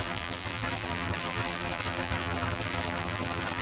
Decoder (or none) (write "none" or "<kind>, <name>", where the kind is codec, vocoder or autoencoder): vocoder, BigVGAN v2